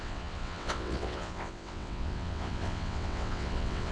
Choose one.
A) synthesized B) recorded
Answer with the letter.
A